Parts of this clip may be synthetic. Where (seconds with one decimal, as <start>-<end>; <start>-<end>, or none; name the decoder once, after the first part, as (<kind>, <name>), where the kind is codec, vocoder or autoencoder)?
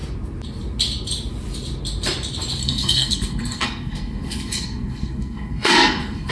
2.6-6.3 (codec, SNAC)